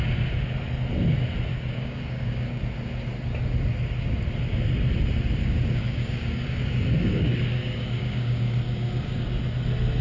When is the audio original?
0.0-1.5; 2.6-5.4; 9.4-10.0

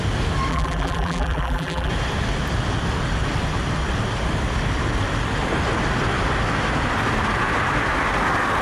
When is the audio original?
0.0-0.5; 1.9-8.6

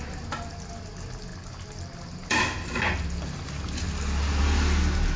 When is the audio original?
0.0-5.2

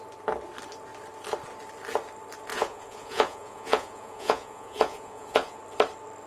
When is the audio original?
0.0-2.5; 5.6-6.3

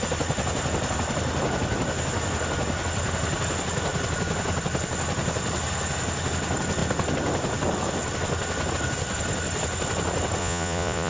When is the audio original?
0.0-10.4

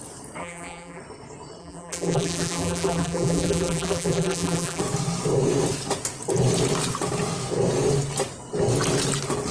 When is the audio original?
0.0-0.4; 1.0-1.6; 4.8-9.5

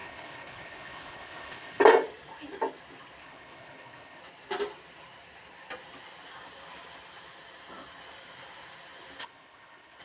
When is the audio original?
1.8-3.2; 4.2-9.2

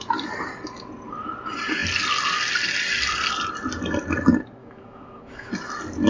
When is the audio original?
0.0-4.6; 5.5-6.1